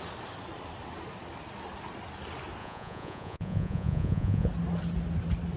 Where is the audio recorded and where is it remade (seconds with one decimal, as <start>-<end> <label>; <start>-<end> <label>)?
0.0-2.6 recorded; 2.6-4.5 remade; 4.5-5.6 recorded